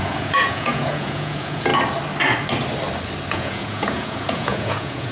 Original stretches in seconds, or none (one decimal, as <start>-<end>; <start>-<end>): 1.7-3.3